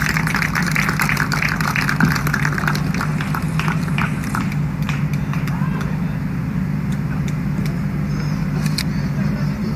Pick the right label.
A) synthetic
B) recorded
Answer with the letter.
B